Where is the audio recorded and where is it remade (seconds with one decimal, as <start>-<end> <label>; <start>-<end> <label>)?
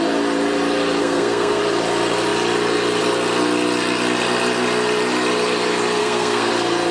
0.0-1.0 recorded; 1.0-1.6 remade; 1.6-6.0 recorded; 6.0-6.5 remade; 6.5-6.9 recorded